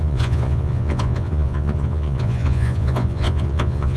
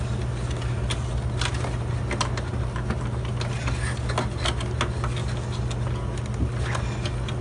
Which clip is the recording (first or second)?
second